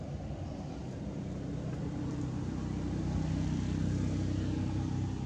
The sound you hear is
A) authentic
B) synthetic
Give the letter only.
A